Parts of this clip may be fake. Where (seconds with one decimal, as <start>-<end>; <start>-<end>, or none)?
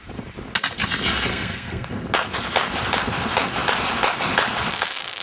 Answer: 1.3-1.9